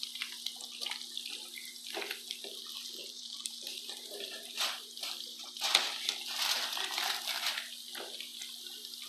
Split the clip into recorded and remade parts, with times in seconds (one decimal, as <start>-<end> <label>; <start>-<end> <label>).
0.0-3.0 recorded; 3.0-5.5 remade; 5.5-9.1 recorded